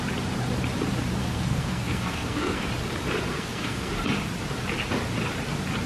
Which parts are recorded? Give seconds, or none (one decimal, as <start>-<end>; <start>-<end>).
0.0-1.2; 2.7-3.3; 3.9-5.9